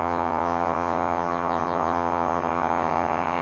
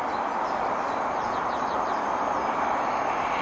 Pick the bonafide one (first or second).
second